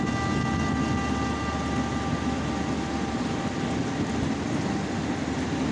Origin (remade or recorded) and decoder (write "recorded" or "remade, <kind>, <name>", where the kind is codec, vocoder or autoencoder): recorded